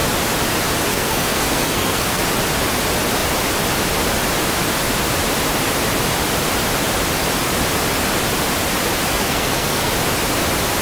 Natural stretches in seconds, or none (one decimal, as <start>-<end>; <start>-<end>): 0.0-0.9; 2.2-9.1; 9.9-10.8